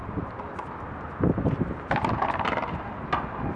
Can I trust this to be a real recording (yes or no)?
yes